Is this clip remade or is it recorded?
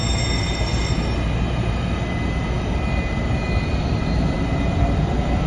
recorded